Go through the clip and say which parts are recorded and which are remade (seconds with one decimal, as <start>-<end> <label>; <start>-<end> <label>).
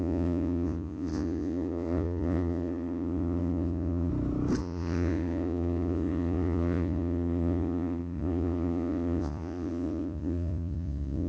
0.0-4.1 remade; 4.1-4.6 recorded; 4.6-11.3 remade